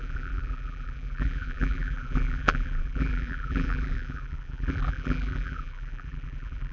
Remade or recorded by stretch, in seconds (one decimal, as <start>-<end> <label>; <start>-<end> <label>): 0.0-6.7 remade